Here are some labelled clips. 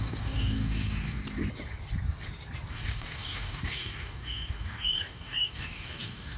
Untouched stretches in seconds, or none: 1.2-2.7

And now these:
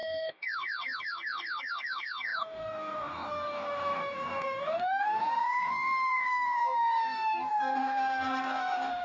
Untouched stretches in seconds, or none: none

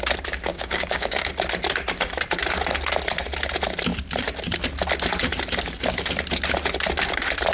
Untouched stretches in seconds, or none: 0.0-0.5; 1.3-7.5

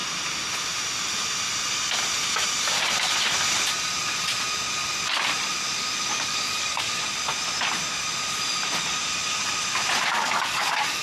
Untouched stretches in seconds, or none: 0.0-6.1; 7.0-10.1

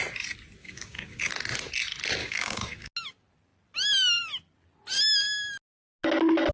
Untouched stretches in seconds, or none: 0.0-0.6; 1.3-2.2; 2.9-6.5

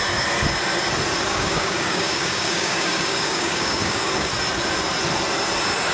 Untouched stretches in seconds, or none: 0.0-1.3; 4.3-5.9